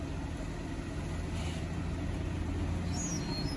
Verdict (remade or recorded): recorded